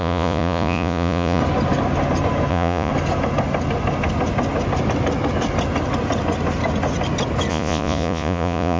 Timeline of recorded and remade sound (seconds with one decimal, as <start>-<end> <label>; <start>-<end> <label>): 0.0-1.4 remade; 1.4-2.5 recorded; 2.5-2.9 remade; 2.9-7.5 recorded; 7.5-8.8 remade